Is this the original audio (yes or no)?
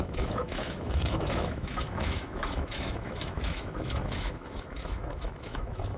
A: no